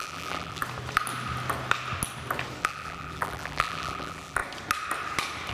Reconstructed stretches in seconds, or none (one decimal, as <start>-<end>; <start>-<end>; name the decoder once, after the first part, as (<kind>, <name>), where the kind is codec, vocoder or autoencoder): 0.0-0.6 (vocoder, BigVGAN v2); 2.6-4.4